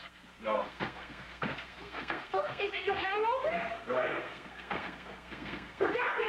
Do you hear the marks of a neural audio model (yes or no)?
yes